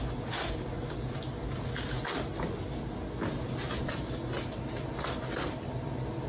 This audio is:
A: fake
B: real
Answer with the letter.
B